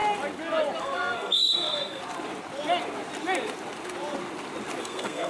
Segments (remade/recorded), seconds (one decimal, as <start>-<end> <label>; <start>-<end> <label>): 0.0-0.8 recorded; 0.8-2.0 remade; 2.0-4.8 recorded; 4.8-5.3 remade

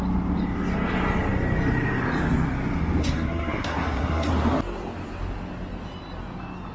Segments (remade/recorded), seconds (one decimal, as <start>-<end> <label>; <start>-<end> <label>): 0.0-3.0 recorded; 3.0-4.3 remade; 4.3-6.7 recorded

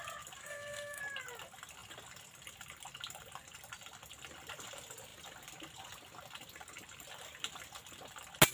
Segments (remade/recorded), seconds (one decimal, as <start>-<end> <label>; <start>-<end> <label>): 0.0-0.4 recorded; 0.4-1.0 remade; 1.0-8.5 recorded

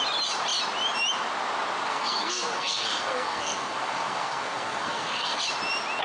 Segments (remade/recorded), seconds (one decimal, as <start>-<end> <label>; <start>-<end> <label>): 0.0-1.9 recorded; 1.9-5.4 remade; 5.4-6.0 recorded